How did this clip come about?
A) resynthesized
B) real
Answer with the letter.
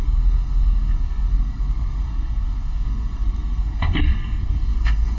A